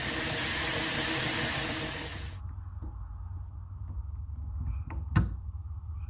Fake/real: real